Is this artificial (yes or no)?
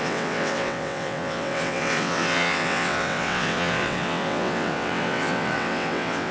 yes